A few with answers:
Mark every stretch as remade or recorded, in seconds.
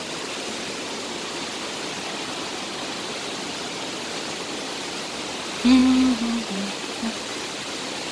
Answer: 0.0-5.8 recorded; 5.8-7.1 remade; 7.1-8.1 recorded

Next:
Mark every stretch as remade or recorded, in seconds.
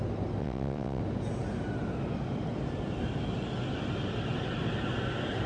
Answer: 0.0-0.4 recorded; 0.4-1.0 remade; 1.0-5.5 recorded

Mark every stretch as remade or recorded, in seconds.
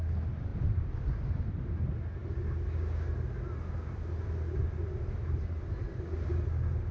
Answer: 0.0-6.9 recorded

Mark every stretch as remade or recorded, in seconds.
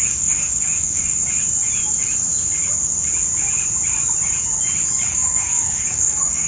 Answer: 0.0-1.2 remade; 1.2-5.1 recorded; 5.1-6.5 remade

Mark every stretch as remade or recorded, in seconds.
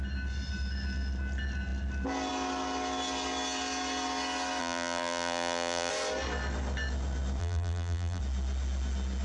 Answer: 0.0-4.6 recorded; 4.6-5.9 remade; 5.9-7.4 recorded; 7.4-8.2 remade; 8.2-9.2 recorded